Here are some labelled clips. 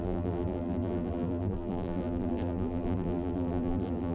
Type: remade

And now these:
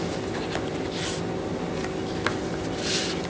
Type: recorded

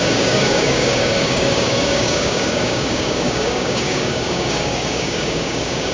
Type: remade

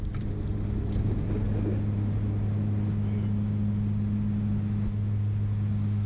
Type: recorded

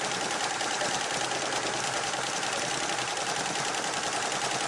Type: recorded